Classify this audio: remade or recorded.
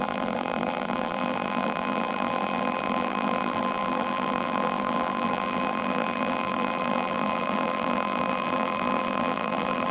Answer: remade